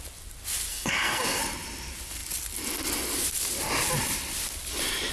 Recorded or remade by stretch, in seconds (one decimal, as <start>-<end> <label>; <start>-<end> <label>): 0.0-0.7 recorded; 0.7-1.4 remade; 1.4-5.1 recorded